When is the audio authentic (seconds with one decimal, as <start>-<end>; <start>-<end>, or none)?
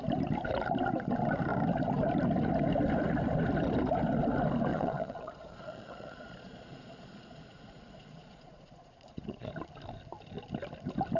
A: 0.0-4.7; 9.5-11.2